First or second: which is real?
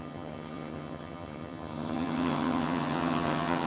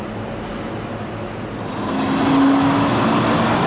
second